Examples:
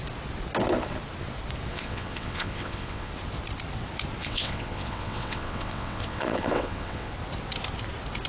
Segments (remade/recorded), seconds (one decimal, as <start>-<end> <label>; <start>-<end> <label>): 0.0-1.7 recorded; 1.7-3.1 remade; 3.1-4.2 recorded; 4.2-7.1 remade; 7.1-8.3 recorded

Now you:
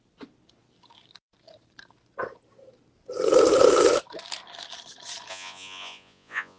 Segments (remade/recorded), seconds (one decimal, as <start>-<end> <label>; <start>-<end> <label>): 0.0-5.3 recorded; 5.3-6.6 remade

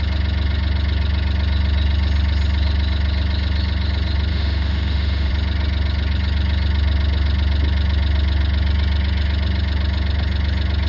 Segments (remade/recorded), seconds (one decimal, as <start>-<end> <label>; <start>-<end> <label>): 0.0-4.3 recorded; 4.3-5.3 remade; 5.3-10.9 recorded

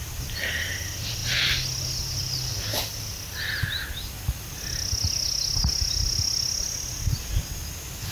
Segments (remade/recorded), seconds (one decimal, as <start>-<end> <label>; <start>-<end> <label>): 0.0-8.1 recorded

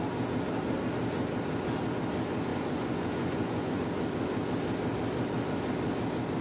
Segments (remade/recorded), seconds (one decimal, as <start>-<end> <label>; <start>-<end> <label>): 0.0-2.5 recorded; 2.5-3.8 remade; 3.8-6.4 recorded

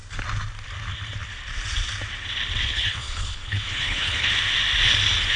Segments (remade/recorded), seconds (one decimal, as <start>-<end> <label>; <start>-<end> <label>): 0.0-2.6 recorded; 2.6-4.3 remade; 4.3-5.4 recorded

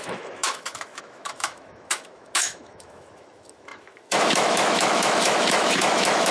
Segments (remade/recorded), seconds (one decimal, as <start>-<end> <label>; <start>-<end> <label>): 0.0-6.3 remade

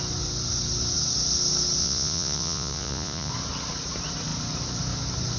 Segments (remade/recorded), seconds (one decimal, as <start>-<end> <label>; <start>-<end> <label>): 0.0-1.8 recorded; 1.8-3.3 remade; 3.3-5.4 recorded